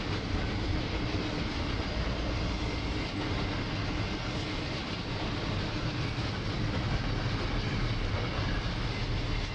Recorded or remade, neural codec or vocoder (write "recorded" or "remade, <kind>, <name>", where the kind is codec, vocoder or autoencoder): recorded